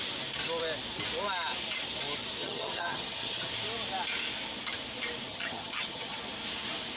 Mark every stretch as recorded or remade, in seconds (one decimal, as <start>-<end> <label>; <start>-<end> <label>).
0.0-2.4 recorded; 2.4-3.5 remade; 3.5-5.3 recorded; 5.3-6.2 remade; 6.2-7.0 recorded